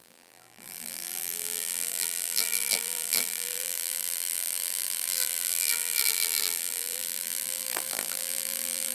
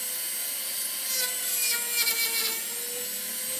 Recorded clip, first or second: second